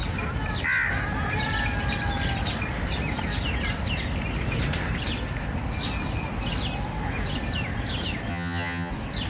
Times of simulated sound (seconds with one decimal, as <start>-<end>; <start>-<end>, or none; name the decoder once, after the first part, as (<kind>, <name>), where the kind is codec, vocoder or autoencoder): 8.3-8.9 (vocoder, HiFi-GAN)